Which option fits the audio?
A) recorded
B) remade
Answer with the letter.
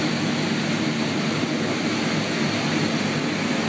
A